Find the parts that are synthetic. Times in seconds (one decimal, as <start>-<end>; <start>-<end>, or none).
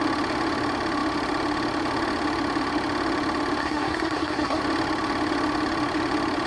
3.6-4.6